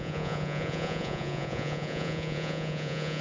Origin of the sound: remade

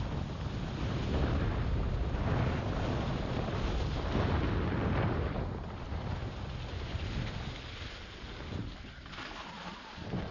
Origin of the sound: recorded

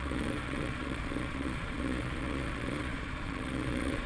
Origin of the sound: remade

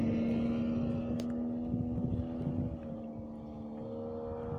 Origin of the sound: recorded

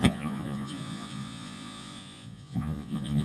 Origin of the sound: remade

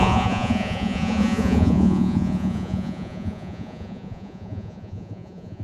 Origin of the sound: remade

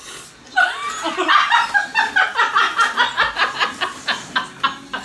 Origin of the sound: recorded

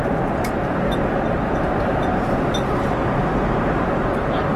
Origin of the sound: recorded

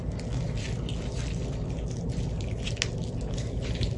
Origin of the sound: recorded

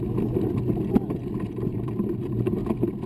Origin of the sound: recorded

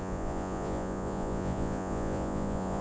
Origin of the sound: remade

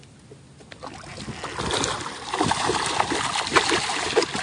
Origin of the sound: recorded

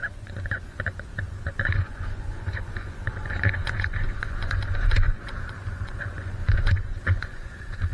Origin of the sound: remade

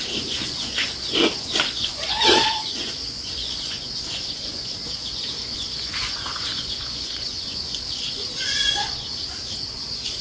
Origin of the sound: remade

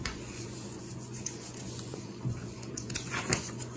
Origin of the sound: remade